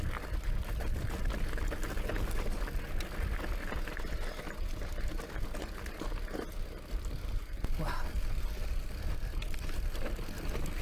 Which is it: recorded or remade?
recorded